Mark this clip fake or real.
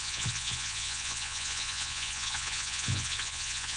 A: fake